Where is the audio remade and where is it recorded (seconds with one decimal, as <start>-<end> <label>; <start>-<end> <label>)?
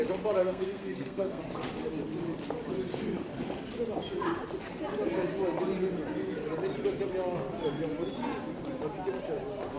0.0-0.4 recorded; 0.4-1.4 remade; 1.4-9.8 recorded